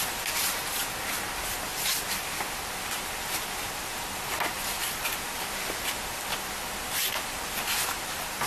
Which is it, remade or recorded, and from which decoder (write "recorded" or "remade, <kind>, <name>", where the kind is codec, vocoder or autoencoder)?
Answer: recorded